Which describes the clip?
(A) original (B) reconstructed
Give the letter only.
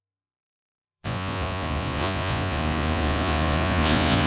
B